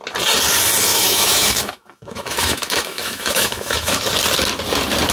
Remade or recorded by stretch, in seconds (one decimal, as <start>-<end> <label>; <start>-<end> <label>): 0.0-0.9 recorded; 0.9-4.0 remade; 4.0-5.1 recorded